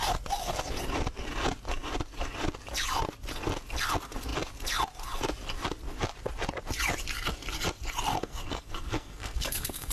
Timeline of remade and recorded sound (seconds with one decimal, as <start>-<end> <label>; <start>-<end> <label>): 0.0-8.1 recorded; 8.1-9.9 remade